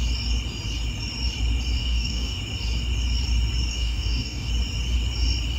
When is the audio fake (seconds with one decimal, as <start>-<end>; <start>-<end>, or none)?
1.8-2.4; 3.7-4.5